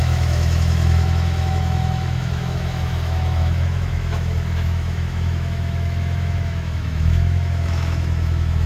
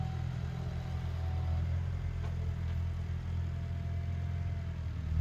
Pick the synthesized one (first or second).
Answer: first